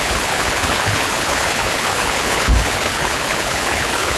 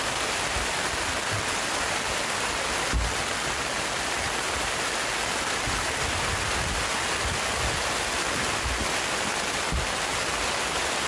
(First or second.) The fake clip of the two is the first